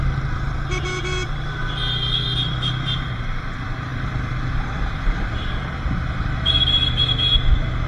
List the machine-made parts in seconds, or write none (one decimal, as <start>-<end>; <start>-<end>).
none